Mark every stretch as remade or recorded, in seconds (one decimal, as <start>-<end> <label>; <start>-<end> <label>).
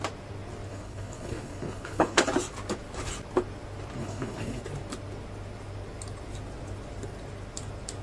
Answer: 0.0-0.7 recorded; 0.7-2.2 remade; 2.2-4.0 recorded; 4.0-4.6 remade; 4.6-8.0 recorded